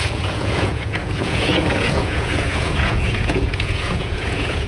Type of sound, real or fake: fake